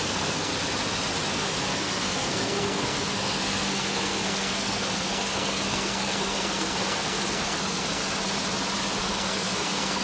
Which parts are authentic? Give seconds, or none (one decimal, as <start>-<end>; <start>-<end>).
0.5-1.3; 8.0-9.0